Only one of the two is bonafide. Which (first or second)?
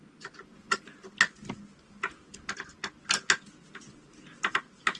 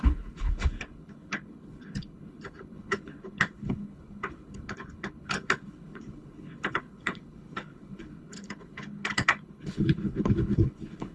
first